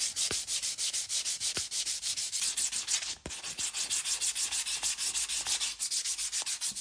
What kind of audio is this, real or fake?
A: real